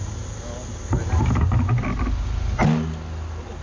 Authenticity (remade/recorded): recorded